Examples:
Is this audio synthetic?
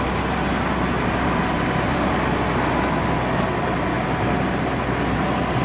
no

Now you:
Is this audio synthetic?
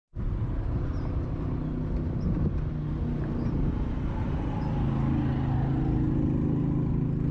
no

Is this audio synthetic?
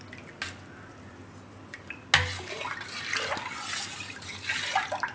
no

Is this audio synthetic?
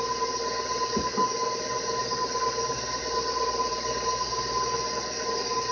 no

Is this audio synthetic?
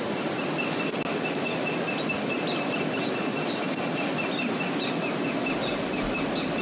no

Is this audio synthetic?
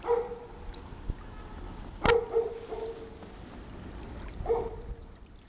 no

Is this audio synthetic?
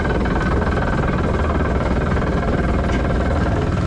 no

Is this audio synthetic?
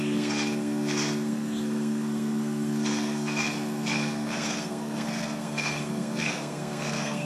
yes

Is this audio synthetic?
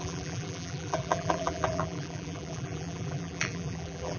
yes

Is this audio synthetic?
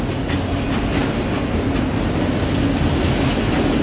no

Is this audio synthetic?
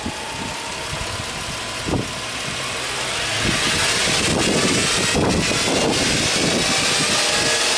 no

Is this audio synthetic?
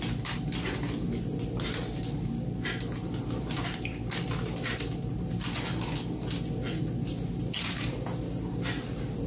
no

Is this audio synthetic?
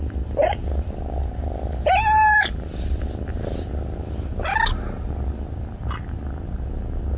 no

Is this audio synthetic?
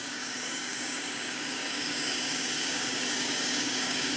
yes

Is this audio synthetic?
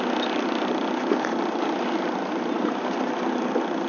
no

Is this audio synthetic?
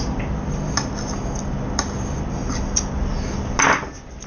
no